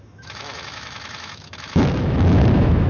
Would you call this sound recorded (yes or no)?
no